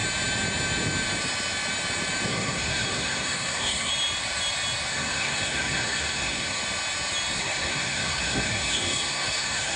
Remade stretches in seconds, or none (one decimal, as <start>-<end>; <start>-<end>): 2.3-3.9; 4.9-6.6; 7.4-9.8